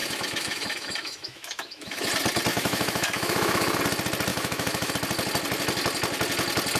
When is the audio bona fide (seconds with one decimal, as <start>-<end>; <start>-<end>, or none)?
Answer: 2.1-2.5; 3.8-4.3; 4.9-6.8